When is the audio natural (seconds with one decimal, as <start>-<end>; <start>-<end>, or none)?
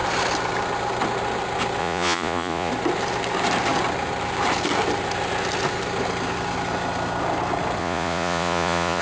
0.0-1.8; 2.7-7.8